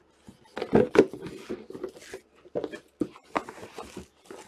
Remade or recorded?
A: recorded